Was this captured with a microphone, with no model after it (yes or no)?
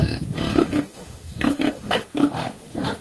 no